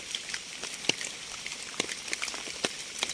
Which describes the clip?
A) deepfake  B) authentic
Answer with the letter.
B